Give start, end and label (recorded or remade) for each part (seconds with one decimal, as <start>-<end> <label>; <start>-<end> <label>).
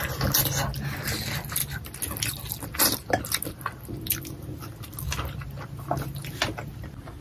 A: 0.0-7.2 recorded